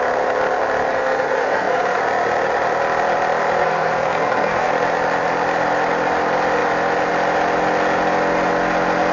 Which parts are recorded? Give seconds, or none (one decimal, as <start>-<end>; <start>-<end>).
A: 0.0-0.9; 2.0-3.6; 4.7-9.1